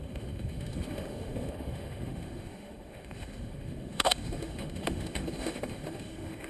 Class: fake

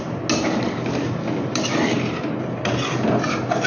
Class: real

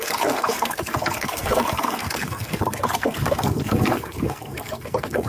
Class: fake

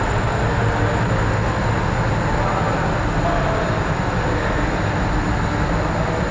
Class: real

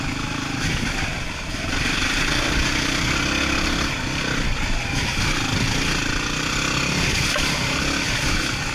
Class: real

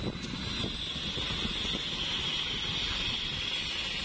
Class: real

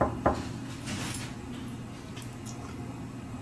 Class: real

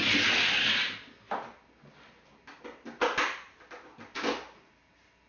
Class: real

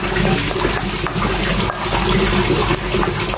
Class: real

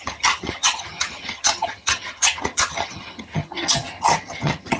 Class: fake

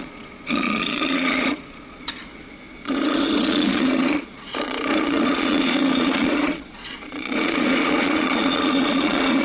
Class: fake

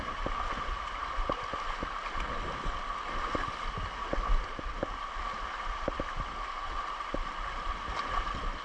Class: real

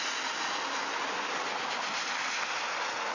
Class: real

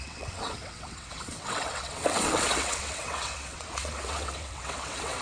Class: fake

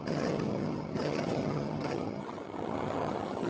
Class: fake